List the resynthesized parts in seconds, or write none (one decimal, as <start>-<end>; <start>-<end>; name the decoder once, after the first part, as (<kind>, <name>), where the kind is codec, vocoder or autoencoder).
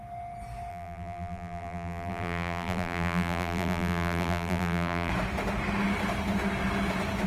0.7-5.1 (vocoder, BigVGAN v2)